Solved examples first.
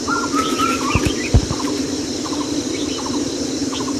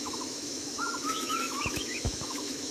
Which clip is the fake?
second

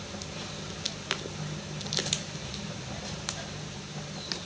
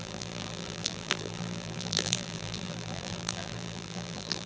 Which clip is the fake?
second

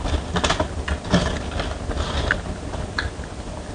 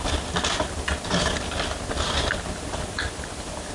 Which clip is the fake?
second